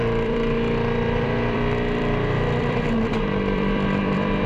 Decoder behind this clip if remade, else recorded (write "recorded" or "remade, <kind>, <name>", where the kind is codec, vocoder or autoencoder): remade, vocoder, BigVGAN v2